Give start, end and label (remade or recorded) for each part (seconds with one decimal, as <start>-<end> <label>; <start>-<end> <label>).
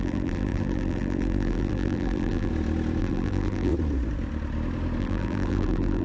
0.0-2.5 remade; 2.5-3.0 recorded; 3.0-3.7 remade; 3.7-5.0 recorded; 5.0-6.0 remade